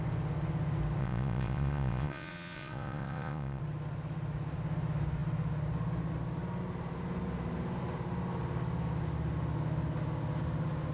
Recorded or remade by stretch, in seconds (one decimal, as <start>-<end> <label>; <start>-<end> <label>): 0.0-1.0 recorded; 1.0-3.6 remade; 3.6-10.9 recorded